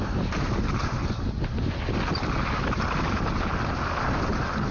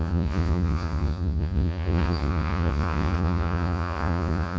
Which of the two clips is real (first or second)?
first